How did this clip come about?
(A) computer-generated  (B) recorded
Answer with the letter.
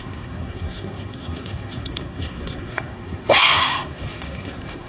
A